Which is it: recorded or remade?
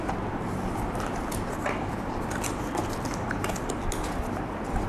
recorded